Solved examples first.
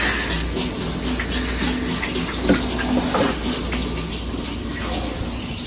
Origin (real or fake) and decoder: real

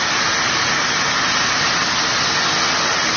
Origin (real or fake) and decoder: real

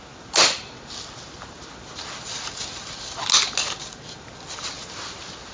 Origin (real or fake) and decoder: real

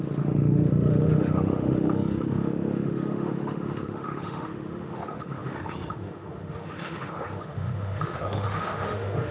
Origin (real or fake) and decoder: fake, autoencoder, DAC-VAE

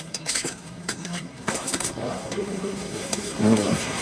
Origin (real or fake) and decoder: fake, codec, SNAC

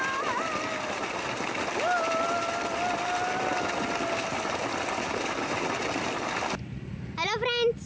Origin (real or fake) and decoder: real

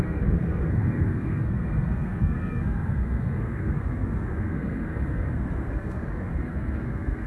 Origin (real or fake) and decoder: fake, codec, SNAC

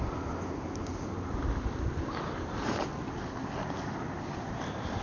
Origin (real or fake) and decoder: real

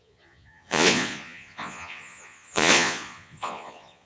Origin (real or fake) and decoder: fake, vocoder, Vocos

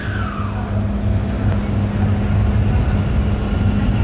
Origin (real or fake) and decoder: real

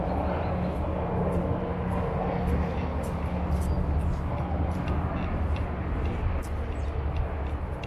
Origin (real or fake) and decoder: real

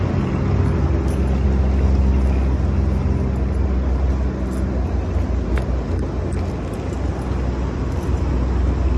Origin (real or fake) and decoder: real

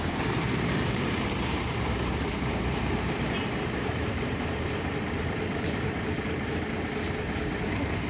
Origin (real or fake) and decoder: fake, vocoder, BigVGAN v2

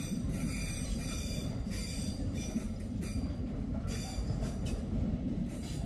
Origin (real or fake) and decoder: fake, vocoder, BigVGAN v2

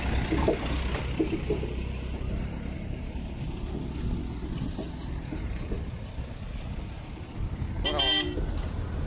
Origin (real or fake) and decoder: real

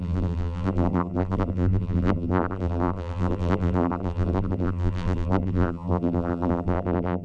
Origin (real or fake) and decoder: fake, vocoder, BigVGAN v2